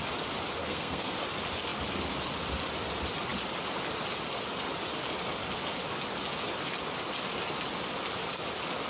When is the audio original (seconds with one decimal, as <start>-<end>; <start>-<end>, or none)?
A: 0.0-0.6; 1.2-8.9